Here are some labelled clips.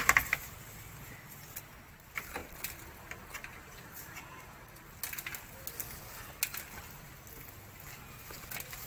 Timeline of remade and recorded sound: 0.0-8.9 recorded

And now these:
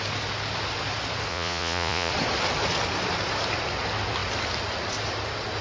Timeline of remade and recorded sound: 0.0-1.3 recorded; 1.3-2.1 remade; 2.1-5.6 recorded